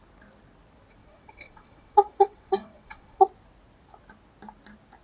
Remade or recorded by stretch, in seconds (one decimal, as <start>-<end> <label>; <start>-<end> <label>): 0.0-1.0 recorded; 1.0-3.2 remade; 3.2-5.0 recorded